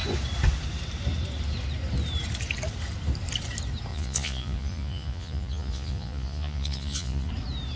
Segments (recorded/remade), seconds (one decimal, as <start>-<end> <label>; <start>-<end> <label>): 0.0-3.9 recorded; 3.9-7.3 remade; 7.3-7.8 recorded